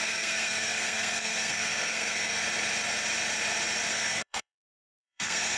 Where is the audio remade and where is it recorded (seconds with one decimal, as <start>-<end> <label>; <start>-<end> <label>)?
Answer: 0.0-2.4 remade; 2.4-3.9 recorded; 3.9-5.6 remade